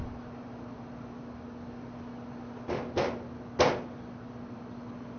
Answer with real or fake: real